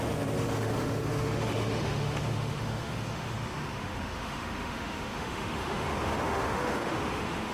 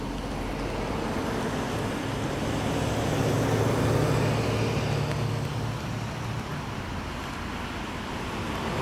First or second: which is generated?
first